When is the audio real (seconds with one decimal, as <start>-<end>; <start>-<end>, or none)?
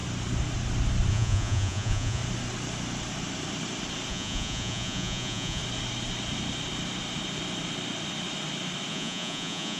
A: 0.0-1.1; 2.2-4.1; 5.6-8.9